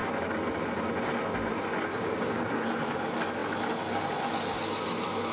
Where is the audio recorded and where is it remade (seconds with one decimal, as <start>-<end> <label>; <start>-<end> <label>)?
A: 0.0-1.9 recorded; 1.9-2.4 remade; 2.4-5.3 recorded